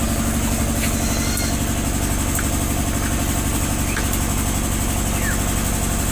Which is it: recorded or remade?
recorded